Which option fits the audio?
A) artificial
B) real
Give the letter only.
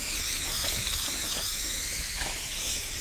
A